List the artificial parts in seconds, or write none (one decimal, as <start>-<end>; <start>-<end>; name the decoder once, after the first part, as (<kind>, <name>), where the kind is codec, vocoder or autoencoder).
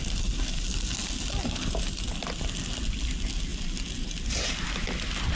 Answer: none